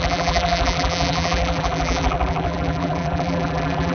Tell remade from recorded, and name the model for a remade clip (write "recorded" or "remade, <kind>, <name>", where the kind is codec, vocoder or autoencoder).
remade, vocoder, BigVGAN v2